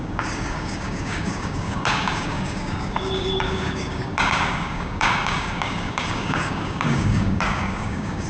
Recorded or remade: remade